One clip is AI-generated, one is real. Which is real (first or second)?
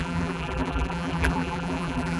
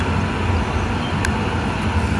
second